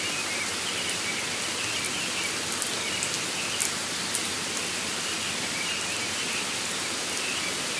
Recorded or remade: recorded